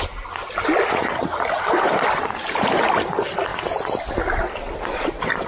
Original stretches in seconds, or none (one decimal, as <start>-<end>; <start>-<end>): 0.0-5.5